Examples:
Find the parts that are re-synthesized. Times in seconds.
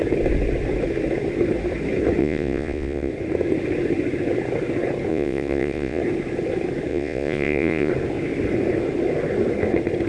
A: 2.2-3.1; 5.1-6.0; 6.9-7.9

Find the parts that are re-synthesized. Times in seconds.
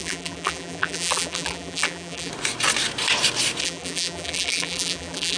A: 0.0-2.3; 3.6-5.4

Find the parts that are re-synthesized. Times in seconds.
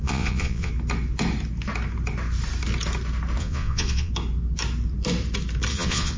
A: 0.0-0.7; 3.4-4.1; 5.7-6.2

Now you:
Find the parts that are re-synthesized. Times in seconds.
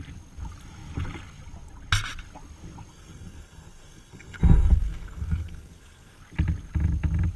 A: 2.9-6.2